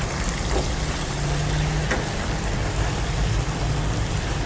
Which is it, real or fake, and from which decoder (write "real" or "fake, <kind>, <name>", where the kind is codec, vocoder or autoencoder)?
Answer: real